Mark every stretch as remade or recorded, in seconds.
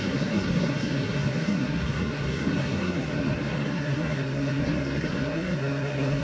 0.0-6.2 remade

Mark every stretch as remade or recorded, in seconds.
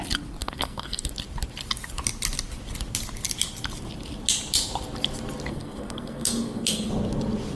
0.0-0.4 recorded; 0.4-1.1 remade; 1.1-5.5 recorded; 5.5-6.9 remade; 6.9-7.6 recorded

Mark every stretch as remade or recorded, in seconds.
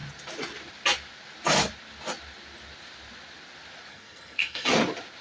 0.0-3.9 recorded; 3.9-4.7 remade; 4.7-5.2 recorded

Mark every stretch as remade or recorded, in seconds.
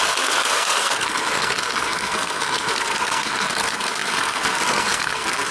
0.0-5.5 remade